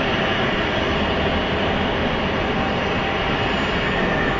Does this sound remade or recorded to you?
recorded